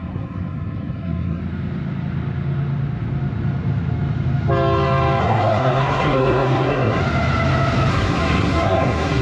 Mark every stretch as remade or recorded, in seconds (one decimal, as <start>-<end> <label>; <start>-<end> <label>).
0.0-1.4 remade; 1.4-5.2 recorded; 5.2-7.0 remade; 7.0-7.9 recorded; 7.9-9.2 remade